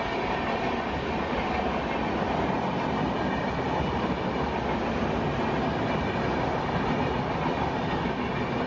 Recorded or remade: recorded